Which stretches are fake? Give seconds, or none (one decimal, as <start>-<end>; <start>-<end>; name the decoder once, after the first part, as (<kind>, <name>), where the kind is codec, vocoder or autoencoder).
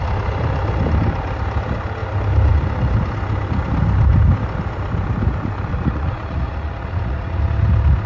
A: 5.7-7.4 (vocoder, Vocos)